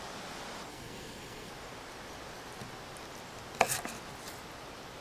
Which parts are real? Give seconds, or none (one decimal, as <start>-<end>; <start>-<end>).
0.0-0.7; 1.5-5.0